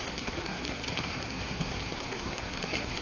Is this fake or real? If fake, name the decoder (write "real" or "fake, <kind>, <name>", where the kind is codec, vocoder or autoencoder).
fake, codec, SNAC